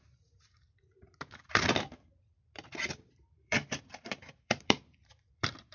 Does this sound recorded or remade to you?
remade